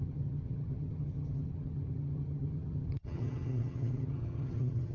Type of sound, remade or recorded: remade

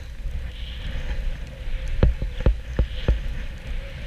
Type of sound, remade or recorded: recorded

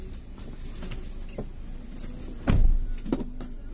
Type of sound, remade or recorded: recorded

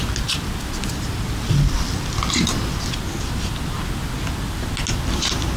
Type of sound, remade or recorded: recorded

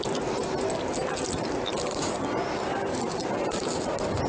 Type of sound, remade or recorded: recorded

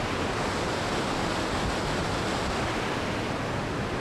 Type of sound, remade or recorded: recorded